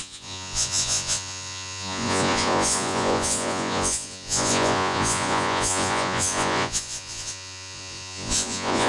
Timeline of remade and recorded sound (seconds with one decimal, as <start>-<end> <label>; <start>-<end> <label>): 0.0-8.9 remade